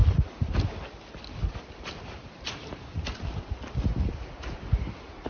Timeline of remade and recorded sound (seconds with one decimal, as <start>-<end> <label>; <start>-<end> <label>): 0.0-5.3 recorded